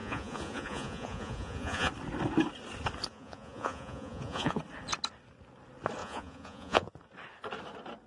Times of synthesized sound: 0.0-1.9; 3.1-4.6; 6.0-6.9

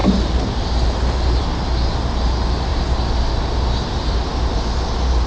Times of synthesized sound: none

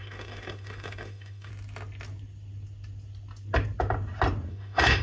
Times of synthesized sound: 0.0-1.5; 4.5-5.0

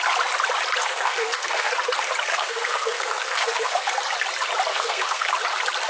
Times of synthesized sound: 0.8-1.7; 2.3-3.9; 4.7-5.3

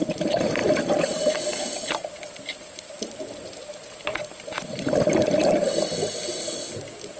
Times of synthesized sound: 5.4-6.5